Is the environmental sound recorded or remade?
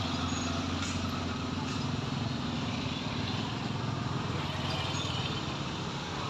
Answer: recorded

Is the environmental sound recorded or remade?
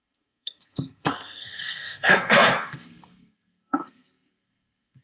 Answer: remade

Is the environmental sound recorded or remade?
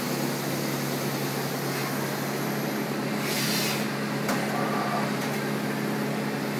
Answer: recorded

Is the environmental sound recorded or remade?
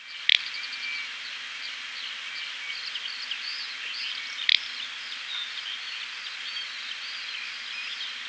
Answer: recorded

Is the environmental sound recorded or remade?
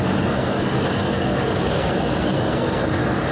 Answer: remade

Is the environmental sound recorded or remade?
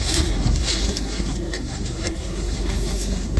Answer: remade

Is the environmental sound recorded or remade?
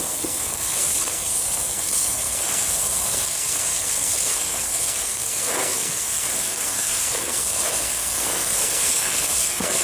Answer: remade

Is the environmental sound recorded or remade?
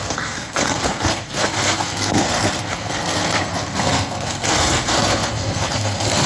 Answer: remade